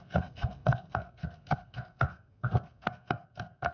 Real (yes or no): no